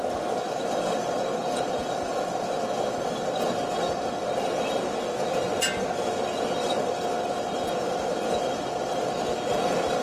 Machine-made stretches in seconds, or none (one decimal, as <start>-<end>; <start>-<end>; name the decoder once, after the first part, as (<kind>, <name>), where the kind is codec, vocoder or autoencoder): none